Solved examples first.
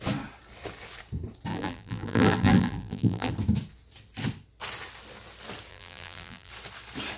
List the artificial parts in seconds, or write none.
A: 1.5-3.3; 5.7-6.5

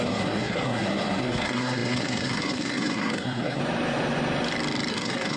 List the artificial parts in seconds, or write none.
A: 0.0-3.6; 4.9-5.4

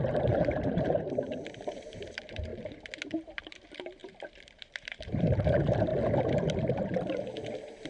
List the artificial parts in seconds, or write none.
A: 0.0-2.5; 3.1-5.9; 6.7-7.9

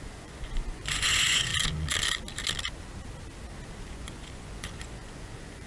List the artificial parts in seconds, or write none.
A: 0.0-1.5; 3.9-5.7

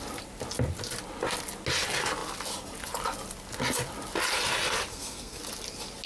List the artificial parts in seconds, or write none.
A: 4.9-5.4

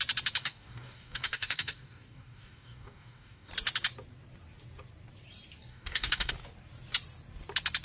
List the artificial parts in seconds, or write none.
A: 0.4-3.5; 5.7-6.3

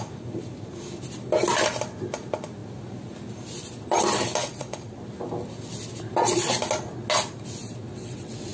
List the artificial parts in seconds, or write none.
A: 4.4-5.0; 7.9-8.5